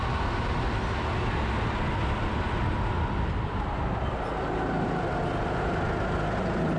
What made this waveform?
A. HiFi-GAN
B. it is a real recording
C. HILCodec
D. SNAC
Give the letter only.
B